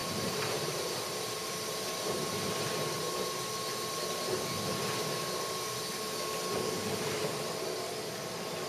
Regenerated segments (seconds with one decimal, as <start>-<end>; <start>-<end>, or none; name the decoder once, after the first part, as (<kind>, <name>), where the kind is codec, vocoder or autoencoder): none